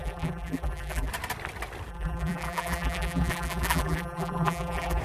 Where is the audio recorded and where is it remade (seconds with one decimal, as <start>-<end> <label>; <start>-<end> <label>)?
0.0-1.1 remade; 1.1-1.9 recorded; 1.9-5.0 remade

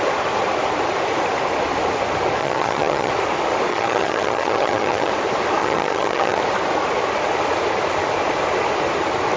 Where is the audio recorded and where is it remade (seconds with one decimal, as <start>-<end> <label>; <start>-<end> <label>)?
0.0-2.4 recorded; 2.4-3.1 remade; 3.1-3.7 recorded; 3.7-5.1 remade; 5.1-5.6 recorded; 5.6-6.4 remade; 6.4-9.4 recorded

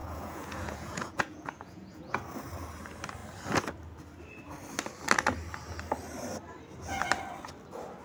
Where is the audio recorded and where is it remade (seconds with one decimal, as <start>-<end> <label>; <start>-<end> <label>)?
0.0-2.2 remade; 2.2-8.0 recorded

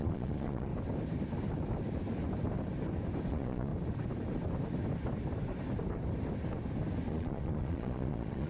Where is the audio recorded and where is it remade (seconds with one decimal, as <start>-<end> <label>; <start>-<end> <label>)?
0.0-0.7 remade; 0.7-3.3 recorded; 3.3-3.7 remade; 3.7-7.1 recorded; 7.1-8.5 remade

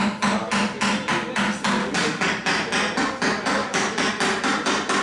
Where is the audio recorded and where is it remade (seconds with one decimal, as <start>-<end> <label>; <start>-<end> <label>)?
0.0-1.8 recorded; 1.8-2.3 remade; 2.3-3.6 recorded; 3.6-4.1 remade; 4.1-5.0 recorded